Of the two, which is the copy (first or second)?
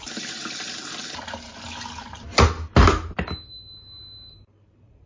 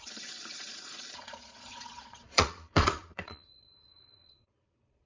second